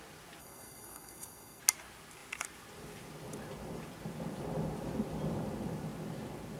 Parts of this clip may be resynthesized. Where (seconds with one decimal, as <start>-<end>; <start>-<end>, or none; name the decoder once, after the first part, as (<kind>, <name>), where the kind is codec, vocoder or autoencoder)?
0.4-1.6 (codec, SNAC)